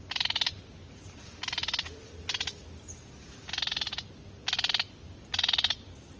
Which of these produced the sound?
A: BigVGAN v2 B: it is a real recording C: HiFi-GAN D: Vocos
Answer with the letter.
B